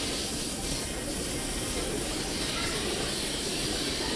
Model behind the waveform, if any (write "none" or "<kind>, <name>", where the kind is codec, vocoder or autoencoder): none